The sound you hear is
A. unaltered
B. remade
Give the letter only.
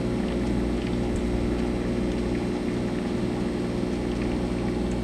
A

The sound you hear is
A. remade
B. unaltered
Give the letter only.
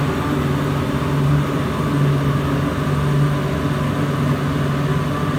B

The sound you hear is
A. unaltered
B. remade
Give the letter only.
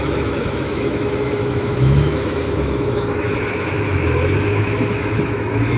B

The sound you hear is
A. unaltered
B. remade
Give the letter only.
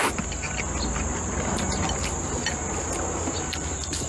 A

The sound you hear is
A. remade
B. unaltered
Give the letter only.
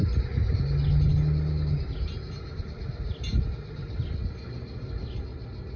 B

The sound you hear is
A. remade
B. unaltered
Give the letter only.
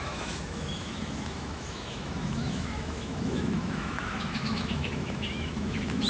A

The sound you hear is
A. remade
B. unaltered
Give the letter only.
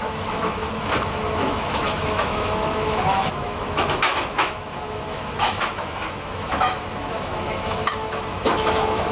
A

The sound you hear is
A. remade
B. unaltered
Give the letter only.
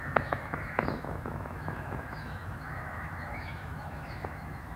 A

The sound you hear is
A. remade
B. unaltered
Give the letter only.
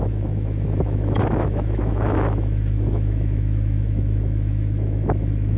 A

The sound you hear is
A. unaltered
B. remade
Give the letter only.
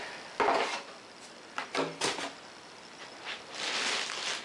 A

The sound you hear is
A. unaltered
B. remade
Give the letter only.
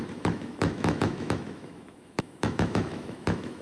B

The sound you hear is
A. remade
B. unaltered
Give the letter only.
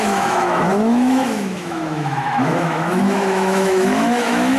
A